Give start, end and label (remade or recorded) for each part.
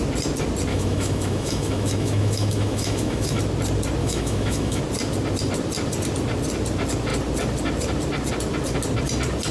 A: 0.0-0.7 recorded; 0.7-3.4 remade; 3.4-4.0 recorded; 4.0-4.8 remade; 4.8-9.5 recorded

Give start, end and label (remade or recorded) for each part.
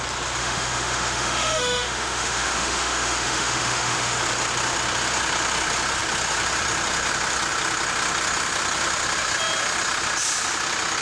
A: 0.0-0.4 recorded; 0.4-4.2 remade; 4.2-11.0 recorded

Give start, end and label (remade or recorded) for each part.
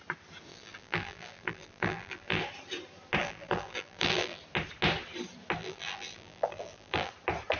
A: 0.0-0.5 recorded; 0.5-2.4 remade; 2.4-3.2 recorded; 3.2-4.4 remade; 4.4-5.6 recorded; 5.6-7.1 remade; 7.1-7.6 recorded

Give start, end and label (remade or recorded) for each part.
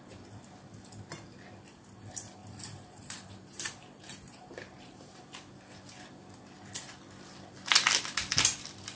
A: 0.0-2.4 recorded; 2.4-5.2 remade; 5.2-9.0 recorded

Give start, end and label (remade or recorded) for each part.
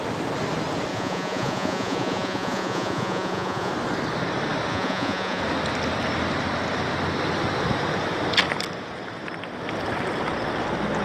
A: 0.0-0.9 recorded; 0.9-3.7 remade; 3.7-4.7 recorded; 4.7-5.4 remade; 5.4-11.0 recorded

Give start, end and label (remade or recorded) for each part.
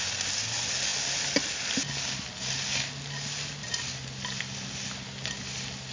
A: 0.0-5.9 recorded